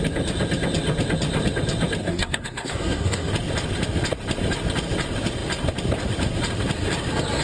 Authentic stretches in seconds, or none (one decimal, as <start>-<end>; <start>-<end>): 0.0-2.0; 3.3-7.4